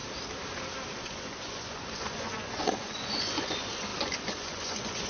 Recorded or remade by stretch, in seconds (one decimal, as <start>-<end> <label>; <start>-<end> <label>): 0.0-1.0 recorded; 1.0-5.1 remade